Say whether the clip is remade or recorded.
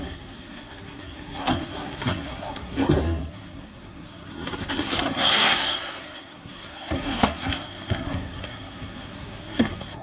remade